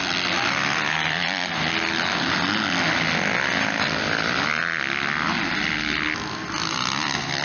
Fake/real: real